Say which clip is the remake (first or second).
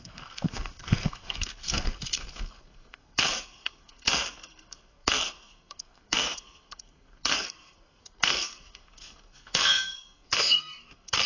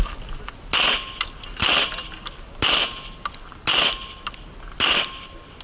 first